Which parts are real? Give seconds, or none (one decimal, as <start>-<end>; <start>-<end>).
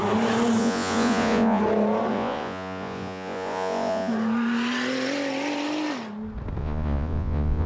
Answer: 0.0-0.6; 1.6-2.1; 4.1-6.6